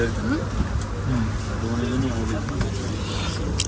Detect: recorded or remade recorded